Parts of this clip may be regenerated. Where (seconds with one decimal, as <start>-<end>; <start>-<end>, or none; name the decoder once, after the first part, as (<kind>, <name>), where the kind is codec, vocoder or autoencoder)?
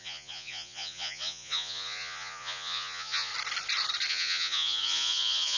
0.0-3.3 (vocoder, Vocos); 4.1-5.6